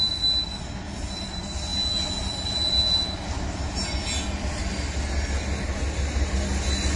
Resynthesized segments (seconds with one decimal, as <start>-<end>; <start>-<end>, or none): none